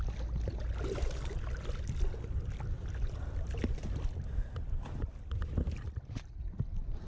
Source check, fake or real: real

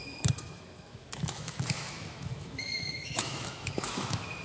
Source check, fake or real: fake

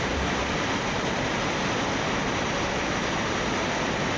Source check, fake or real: real